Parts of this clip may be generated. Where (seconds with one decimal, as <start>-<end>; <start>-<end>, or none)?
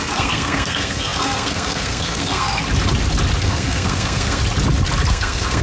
0.0-2.6; 3.4-4.4; 5.1-5.6